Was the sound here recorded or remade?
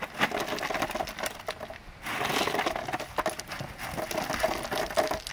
recorded